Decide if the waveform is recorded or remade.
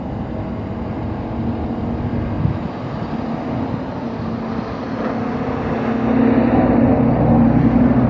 recorded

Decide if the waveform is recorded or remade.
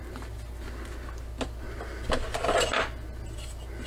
recorded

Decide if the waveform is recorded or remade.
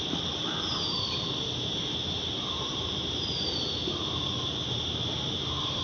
remade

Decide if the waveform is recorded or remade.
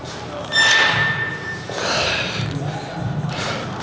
remade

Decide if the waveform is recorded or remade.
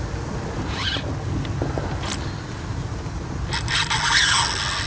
recorded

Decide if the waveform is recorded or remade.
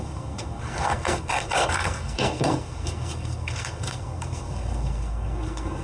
remade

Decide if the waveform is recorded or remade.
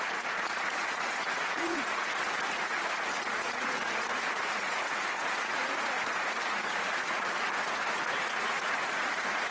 remade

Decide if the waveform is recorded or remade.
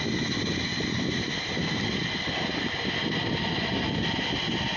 recorded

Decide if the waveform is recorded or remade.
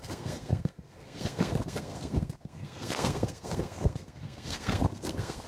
remade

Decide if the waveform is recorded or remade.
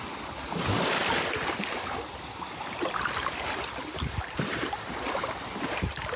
remade